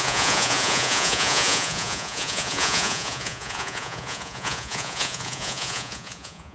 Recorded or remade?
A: remade